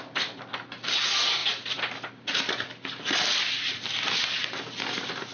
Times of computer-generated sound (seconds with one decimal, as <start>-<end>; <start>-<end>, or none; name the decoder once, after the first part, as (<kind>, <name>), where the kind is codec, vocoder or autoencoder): none